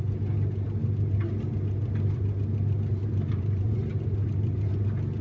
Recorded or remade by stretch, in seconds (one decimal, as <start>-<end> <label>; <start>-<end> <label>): 0.0-3.0 recorded; 3.0-4.7 remade; 4.7-5.2 recorded